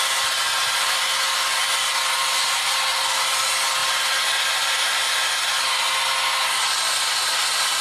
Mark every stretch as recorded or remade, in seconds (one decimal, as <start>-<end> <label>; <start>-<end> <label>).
0.0-7.8 recorded